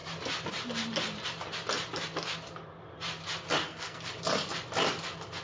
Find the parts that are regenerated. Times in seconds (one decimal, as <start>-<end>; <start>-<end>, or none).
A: 3.6-4.1